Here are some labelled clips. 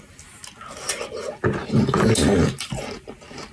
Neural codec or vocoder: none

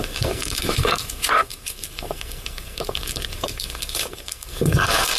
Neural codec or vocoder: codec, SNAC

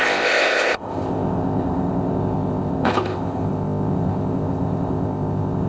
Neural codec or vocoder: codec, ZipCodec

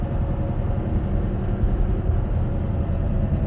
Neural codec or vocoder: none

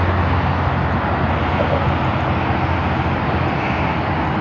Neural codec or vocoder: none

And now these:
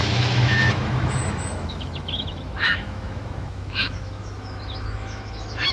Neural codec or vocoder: autoencoder, DAC-VAE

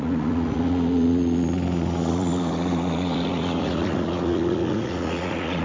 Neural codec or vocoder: vocoder, Vocos